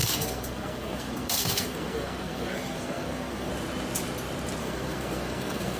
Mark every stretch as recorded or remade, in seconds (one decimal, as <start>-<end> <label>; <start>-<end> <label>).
0.0-3.5 remade; 3.5-4.6 recorded; 4.6-5.8 remade